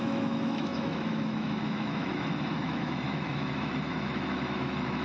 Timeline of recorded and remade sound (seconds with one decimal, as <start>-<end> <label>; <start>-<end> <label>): 0.0-5.0 remade